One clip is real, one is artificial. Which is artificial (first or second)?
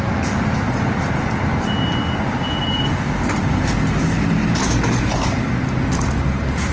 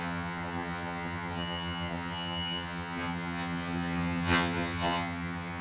second